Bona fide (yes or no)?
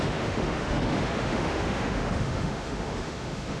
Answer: no